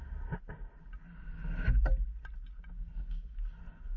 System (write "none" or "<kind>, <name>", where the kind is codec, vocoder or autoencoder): none